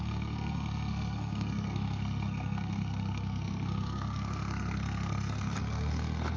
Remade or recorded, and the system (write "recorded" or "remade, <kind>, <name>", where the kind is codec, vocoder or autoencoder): remade, codec, SNAC